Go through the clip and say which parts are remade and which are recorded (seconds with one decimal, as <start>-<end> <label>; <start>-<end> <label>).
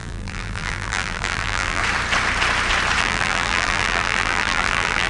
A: 0.0-1.8 remade; 1.8-3.0 recorded; 3.0-5.1 remade